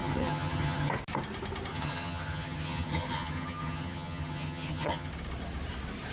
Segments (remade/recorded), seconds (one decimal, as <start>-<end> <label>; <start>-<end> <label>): 0.0-0.9 remade; 0.9-1.7 recorded; 1.7-5.1 remade; 5.1-6.1 recorded